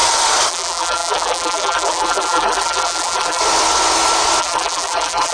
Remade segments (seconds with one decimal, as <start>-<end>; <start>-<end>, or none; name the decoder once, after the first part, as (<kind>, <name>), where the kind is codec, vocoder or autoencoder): 0.5-3.4 (vocoder, BigVGAN v2); 4.4-5.3